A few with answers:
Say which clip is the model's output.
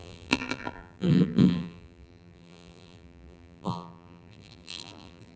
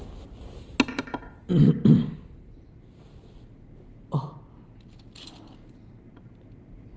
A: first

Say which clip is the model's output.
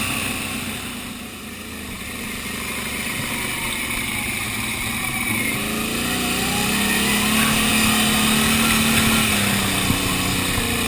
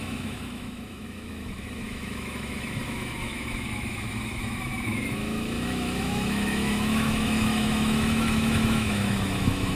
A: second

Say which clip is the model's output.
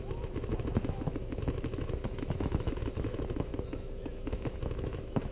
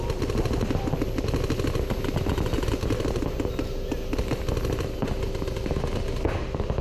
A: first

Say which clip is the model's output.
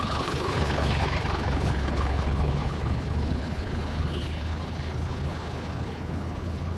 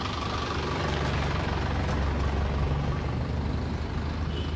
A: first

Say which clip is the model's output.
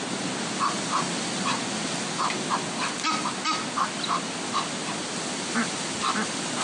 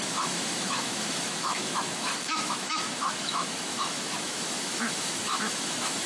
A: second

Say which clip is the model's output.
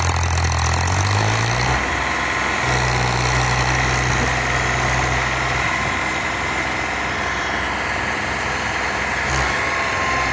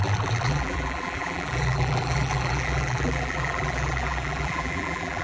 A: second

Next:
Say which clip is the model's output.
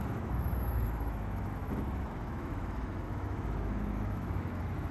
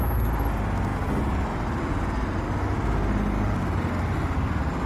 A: first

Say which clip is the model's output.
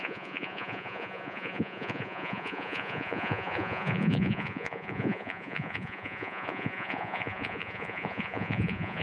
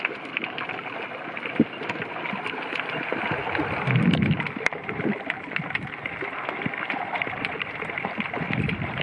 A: first